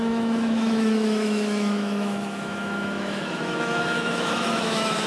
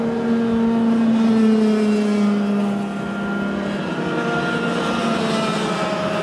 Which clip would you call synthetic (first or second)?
first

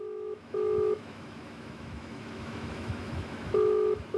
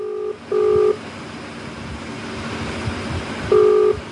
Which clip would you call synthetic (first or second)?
first